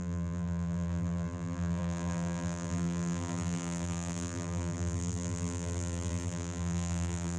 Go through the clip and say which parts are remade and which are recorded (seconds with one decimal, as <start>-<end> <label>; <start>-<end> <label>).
0.0-7.4 remade